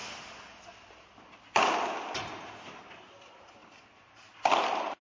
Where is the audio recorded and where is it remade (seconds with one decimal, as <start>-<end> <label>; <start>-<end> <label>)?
0.0-3.6 recorded; 3.6-5.1 remade

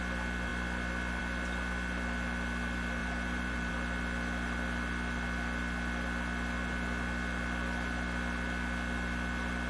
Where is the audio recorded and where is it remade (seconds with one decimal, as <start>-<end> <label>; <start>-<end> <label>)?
0.0-3.0 recorded; 3.0-3.7 remade; 3.7-9.7 recorded

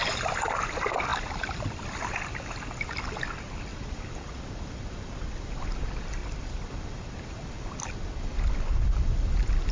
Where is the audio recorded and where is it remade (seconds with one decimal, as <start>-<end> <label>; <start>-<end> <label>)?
0.0-1.1 recorded; 1.1-2.3 remade; 2.3-3.7 recorded; 3.7-5.5 remade; 5.5-6.2 recorded; 6.2-8.2 remade; 8.2-9.7 recorded

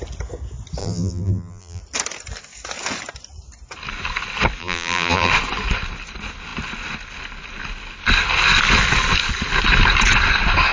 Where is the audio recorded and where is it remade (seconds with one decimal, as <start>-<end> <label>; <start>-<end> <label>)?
0.0-0.8 recorded; 0.8-1.8 remade; 1.8-4.6 recorded; 4.6-5.3 remade; 5.3-10.7 recorded

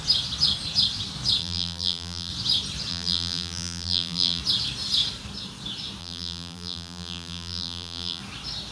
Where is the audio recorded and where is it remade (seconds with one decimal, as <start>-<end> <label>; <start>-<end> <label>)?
0.0-1.4 recorded; 1.4-2.3 remade; 2.3-2.9 recorded; 2.9-4.4 remade; 4.4-6.0 recorded; 6.0-8.2 remade; 8.2-8.7 recorded

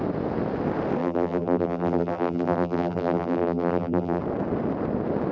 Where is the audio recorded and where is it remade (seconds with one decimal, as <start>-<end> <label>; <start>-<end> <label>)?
0.0-1.0 recorded; 1.0-4.2 remade; 4.2-5.3 recorded

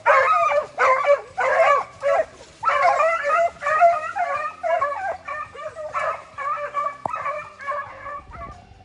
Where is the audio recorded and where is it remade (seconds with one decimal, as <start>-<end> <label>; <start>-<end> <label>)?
0.0-0.5 recorded; 0.5-2.6 remade; 2.6-5.3 recorded; 5.3-7.5 remade; 7.5-8.8 recorded